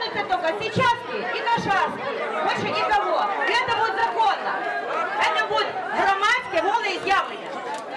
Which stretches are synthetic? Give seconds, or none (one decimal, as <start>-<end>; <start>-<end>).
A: none